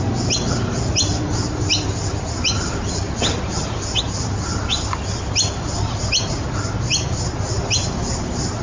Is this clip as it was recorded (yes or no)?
yes